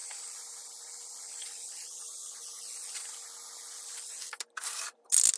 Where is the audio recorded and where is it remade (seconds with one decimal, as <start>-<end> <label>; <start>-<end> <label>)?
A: 0.0-0.6 remade; 0.6-5.4 recorded